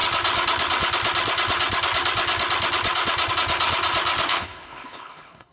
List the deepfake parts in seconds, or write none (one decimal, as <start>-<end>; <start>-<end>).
4.3-5.5

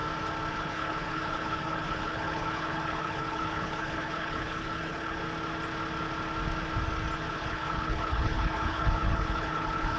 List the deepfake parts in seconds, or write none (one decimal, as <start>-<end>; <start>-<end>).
0.5-5.2; 7.3-10.0

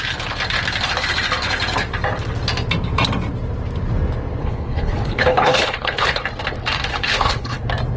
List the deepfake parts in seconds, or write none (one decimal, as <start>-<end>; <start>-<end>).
4.4-6.2; 6.9-7.6

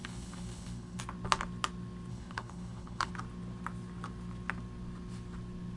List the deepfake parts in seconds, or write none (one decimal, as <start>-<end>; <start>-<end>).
0.0-1.0; 2.1-3.1

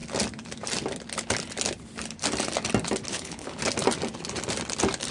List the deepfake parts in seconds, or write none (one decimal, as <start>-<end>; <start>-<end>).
3.1-3.6

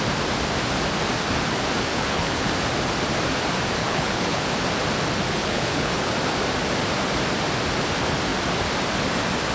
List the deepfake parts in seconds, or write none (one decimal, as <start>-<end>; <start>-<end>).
1.9-2.5; 3.8-4.4; 5.4-6.1

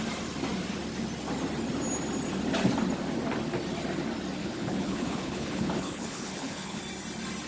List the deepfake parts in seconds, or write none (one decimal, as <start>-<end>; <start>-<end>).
4.4-6.8

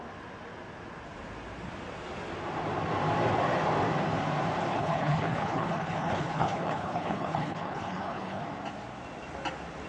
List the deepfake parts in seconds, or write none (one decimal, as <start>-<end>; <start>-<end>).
4.7-8.4